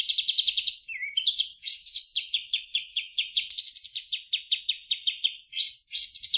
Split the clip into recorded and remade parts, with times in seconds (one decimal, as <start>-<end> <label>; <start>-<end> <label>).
0.0-1.8 recorded; 1.8-3.3 remade; 3.3-6.4 recorded